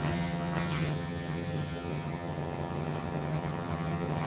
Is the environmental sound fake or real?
fake